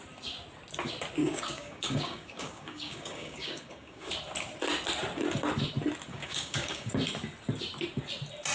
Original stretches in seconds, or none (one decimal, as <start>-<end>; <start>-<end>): 0.0-1.2; 4.1-6.1; 6.9-8.5